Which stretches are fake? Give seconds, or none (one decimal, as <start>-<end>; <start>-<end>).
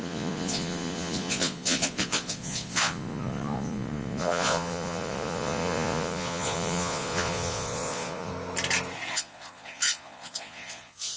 0.0-8.3; 9.1-11.2